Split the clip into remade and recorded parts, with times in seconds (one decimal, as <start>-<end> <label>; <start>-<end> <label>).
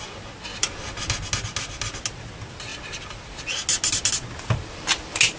0.0-5.4 recorded